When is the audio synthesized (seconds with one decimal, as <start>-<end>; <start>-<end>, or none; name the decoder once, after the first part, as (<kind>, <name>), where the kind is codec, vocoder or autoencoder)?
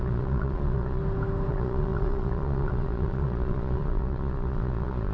0.0-1.0 (vocoder, Vocos); 1.5-5.1